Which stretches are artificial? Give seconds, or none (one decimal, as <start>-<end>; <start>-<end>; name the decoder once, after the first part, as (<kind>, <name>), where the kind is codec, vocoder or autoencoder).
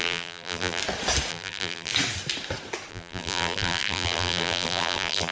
0.0-0.8 (vocoder, BigVGAN v2); 1.3-1.9; 2.9-5.3